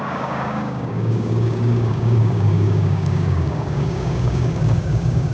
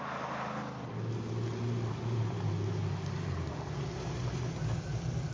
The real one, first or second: second